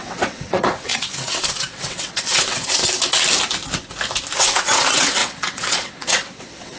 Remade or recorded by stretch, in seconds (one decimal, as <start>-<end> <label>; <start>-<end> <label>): 0.0-2.8 remade; 2.8-4.4 recorded; 4.4-6.8 remade